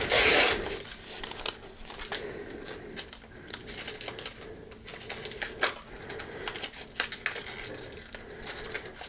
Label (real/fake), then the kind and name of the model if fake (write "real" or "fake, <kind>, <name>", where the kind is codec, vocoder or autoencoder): real